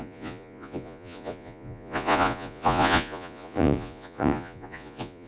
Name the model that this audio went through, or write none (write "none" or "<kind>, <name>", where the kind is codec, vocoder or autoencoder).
vocoder, Vocos